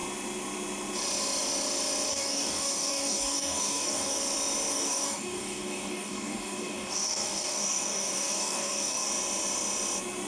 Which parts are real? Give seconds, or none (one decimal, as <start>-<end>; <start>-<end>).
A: 0.0-2.1; 4.2-4.7; 9.1-10.3